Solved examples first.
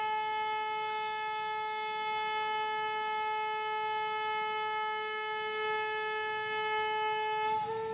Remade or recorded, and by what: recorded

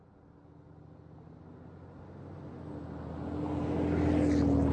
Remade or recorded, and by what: recorded